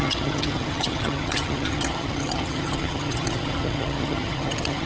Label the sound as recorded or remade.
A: remade